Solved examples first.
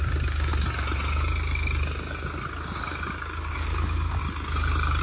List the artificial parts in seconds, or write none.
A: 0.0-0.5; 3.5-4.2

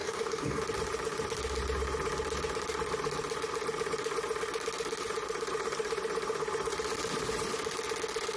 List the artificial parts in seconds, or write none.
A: 0.0-0.6

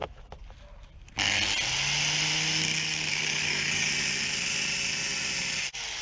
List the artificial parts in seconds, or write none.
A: 3.1-3.9

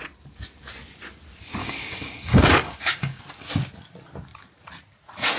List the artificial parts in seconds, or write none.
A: 1.6-3.2

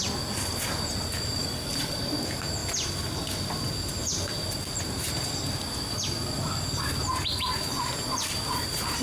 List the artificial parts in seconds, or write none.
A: 1.4-2.0